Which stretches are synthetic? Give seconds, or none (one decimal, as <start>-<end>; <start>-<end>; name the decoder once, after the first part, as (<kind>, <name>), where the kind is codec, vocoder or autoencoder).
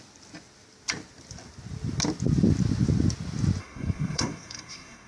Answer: 3.6-5.1 (codec, SNAC)